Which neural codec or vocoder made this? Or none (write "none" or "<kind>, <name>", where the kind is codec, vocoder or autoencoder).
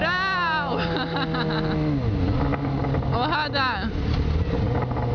none